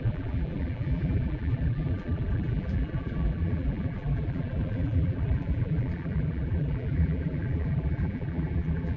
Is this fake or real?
fake